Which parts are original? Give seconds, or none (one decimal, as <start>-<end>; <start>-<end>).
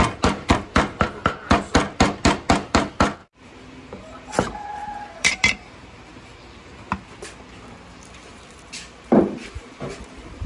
0.0-3.2; 6.8-8.3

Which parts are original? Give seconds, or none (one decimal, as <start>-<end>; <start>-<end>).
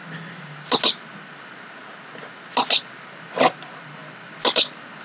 0.0-5.0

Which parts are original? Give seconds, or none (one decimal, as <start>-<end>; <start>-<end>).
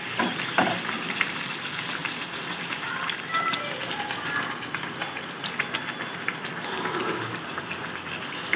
2.0-4.4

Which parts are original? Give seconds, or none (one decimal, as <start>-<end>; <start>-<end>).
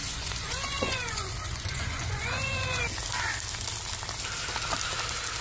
2.8-5.4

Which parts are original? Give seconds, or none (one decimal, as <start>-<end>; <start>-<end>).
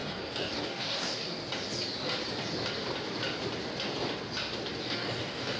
1.4-4.8